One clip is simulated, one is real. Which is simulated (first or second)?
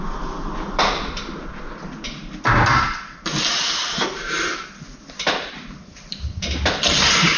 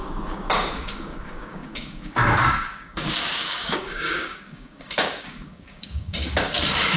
second